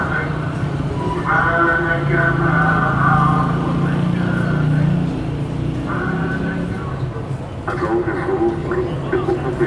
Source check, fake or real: real